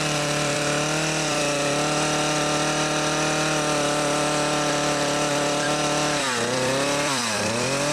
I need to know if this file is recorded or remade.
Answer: remade